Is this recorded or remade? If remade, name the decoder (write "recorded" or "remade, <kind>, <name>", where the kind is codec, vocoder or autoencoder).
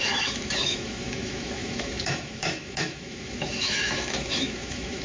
remade, autoencoder, DAC-VAE